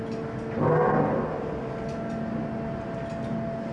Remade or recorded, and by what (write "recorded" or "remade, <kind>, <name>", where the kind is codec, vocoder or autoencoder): recorded